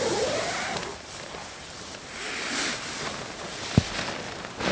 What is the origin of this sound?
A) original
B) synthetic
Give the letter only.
A